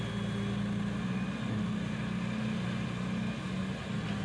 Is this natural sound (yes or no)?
yes